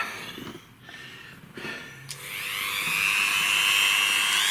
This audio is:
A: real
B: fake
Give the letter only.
A